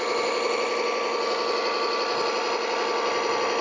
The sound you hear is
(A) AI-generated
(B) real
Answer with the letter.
B